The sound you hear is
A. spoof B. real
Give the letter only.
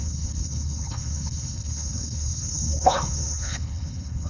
A